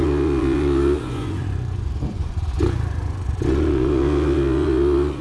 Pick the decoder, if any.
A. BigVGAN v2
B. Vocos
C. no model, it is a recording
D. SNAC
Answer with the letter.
B